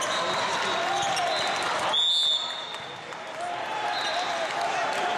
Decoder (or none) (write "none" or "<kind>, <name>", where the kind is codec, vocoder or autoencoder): none